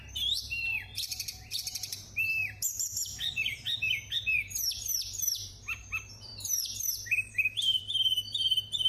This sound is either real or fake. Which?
fake